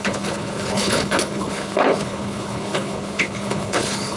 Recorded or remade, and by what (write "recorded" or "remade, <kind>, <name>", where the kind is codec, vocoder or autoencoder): remade, codec, HILCodec